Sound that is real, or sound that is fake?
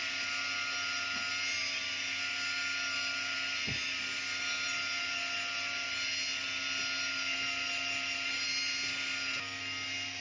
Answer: real